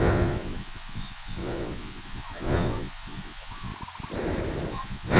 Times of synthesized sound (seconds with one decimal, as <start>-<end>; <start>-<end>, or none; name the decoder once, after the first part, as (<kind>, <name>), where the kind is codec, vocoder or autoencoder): 0.0-3.7 (vocoder, Vocos); 4.7-5.2